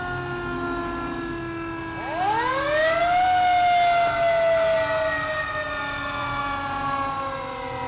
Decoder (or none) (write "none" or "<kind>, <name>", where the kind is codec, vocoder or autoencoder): none